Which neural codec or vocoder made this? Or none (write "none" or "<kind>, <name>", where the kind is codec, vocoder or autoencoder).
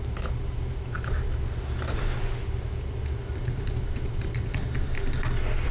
none